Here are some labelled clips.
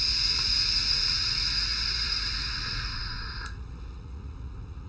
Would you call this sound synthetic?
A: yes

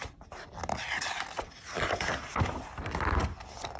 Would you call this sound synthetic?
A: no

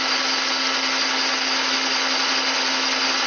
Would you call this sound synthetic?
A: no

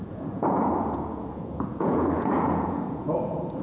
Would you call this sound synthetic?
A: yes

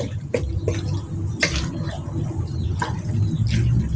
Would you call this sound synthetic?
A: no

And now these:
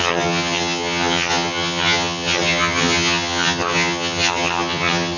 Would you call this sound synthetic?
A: yes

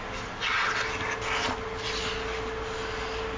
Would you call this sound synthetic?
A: no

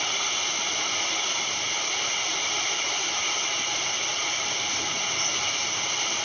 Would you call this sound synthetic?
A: no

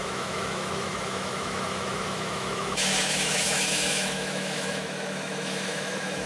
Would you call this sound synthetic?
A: yes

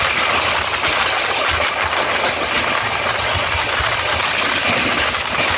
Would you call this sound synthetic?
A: no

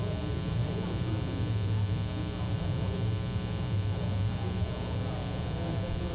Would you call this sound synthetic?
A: no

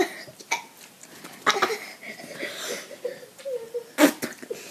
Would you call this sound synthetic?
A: no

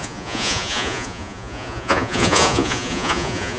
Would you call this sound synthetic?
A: yes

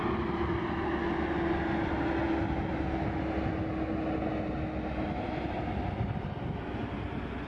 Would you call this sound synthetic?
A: no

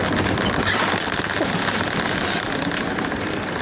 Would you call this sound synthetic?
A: no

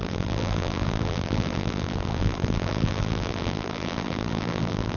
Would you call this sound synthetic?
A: yes